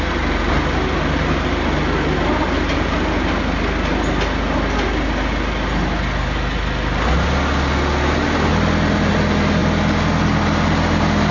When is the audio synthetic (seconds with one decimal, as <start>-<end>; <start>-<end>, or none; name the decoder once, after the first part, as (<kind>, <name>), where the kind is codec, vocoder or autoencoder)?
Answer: none

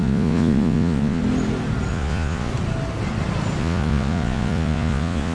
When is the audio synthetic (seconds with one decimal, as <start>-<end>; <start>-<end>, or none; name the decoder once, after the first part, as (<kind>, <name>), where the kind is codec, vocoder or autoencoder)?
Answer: 0.0-1.2 (vocoder, Vocos); 1.9-2.5; 3.6-5.3

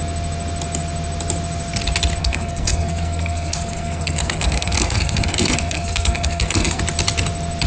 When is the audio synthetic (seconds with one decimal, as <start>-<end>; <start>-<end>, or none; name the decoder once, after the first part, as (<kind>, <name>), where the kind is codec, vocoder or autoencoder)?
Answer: 2.2-6.8 (codec, SNAC)

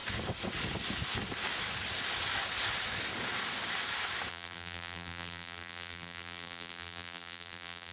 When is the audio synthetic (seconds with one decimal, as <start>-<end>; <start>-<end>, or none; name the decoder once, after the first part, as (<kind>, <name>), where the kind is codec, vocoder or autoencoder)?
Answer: 4.3-7.9 (vocoder, BigVGAN v2)

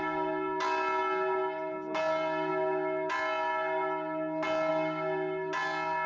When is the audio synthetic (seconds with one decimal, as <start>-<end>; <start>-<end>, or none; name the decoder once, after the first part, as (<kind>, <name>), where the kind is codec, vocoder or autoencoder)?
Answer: none